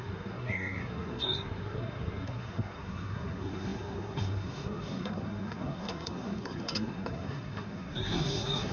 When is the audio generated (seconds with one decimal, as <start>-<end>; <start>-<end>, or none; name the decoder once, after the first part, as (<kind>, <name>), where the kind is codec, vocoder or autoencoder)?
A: 0.0-8.7 (codec, SNAC)